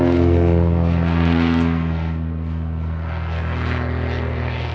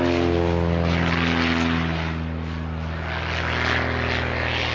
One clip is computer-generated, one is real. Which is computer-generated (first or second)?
first